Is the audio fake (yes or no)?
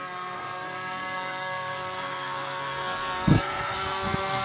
yes